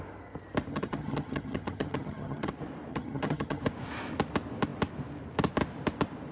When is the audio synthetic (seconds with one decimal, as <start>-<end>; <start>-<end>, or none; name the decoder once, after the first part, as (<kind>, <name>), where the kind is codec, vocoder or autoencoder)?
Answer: 0.7-2.5 (vocoder, HiFi-GAN); 2.9-3.6